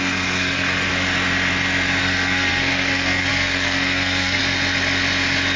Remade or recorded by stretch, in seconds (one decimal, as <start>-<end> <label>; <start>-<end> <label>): 0.0-0.9 remade; 0.9-2.0 recorded; 2.0-4.4 remade; 4.4-5.6 recorded